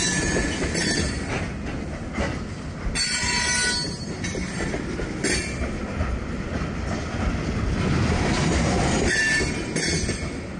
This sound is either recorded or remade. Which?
recorded